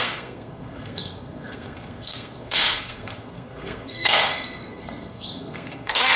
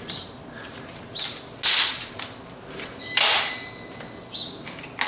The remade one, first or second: first